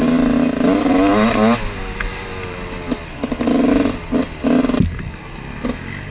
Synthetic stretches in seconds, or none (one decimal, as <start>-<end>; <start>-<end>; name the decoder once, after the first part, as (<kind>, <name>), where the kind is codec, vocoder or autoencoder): none